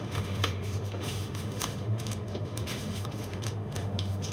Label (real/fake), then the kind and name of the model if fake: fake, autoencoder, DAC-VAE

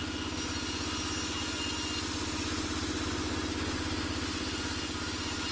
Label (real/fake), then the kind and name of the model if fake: real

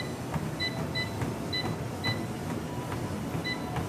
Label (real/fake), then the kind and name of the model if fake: real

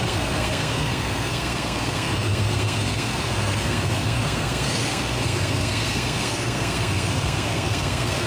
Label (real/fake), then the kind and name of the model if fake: fake, codec, SNAC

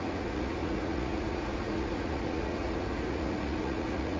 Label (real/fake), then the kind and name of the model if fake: fake, vocoder, Vocos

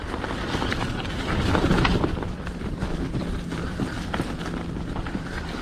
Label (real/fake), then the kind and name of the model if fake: fake, vocoder, BigVGAN v2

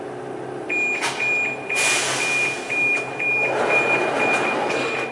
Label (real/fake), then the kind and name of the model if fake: real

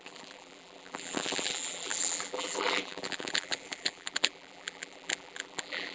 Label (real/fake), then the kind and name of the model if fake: fake, vocoder, BigVGAN v2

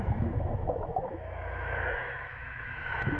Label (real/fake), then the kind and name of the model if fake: fake, autoencoder, DAC-VAE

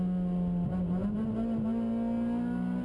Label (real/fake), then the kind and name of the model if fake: real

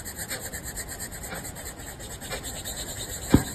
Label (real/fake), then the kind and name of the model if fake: real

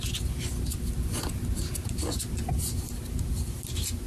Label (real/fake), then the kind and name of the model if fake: real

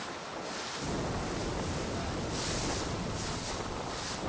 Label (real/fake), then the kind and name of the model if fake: real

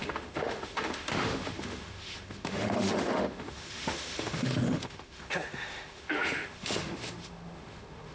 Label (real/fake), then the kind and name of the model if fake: fake, autoencoder, DAC-VAE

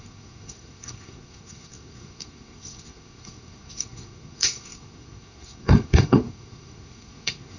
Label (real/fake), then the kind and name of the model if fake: fake, codec, SNAC